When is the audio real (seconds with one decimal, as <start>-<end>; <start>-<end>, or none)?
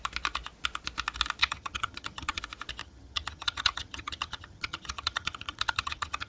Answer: 0.0-1.4; 2.4-2.8